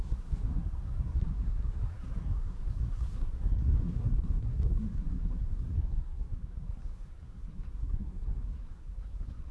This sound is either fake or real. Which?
fake